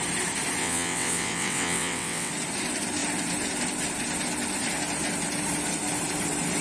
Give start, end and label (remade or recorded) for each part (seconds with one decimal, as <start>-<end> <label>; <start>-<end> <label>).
0.0-0.6 recorded; 0.6-2.3 remade; 2.3-6.6 recorded